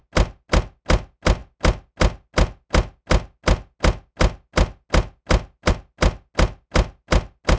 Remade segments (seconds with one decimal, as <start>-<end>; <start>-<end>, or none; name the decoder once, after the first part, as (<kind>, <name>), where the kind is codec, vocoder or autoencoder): none